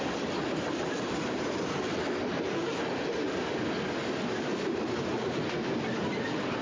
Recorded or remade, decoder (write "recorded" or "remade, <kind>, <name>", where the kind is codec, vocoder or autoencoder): remade, vocoder, BigVGAN v2